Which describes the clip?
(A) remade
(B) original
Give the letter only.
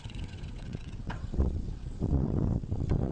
A